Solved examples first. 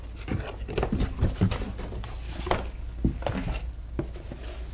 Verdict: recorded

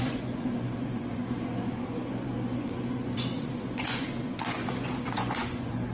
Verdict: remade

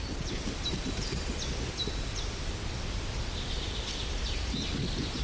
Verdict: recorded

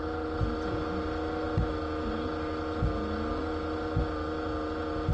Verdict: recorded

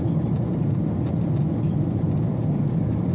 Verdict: recorded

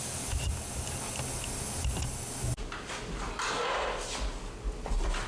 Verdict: recorded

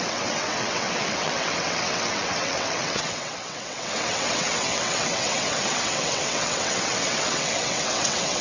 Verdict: remade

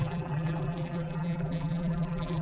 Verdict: remade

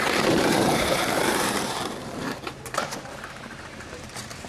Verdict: remade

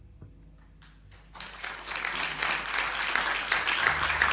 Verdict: recorded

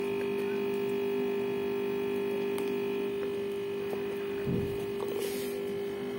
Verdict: recorded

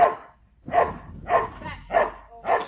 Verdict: recorded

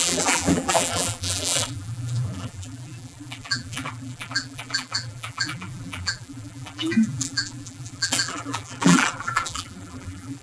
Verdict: remade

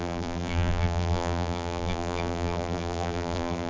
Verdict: remade